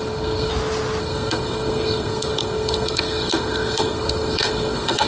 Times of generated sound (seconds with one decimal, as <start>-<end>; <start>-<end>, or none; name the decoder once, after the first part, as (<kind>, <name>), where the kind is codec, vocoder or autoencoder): 0.0-0.5 (codec, SNAC); 1.0-5.1